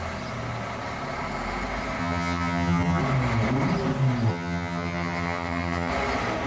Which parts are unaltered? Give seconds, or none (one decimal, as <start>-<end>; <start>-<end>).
0.0-2.0; 3.0-4.3; 5.9-6.5